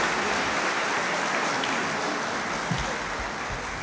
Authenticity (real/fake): real